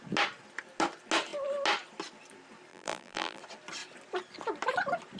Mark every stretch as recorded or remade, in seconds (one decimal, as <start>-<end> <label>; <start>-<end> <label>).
0.0-2.7 recorded; 2.7-3.4 remade; 3.4-5.2 recorded